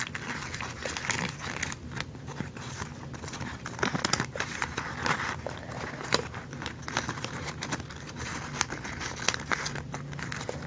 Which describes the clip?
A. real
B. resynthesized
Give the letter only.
A